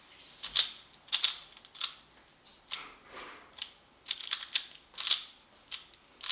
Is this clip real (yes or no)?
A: yes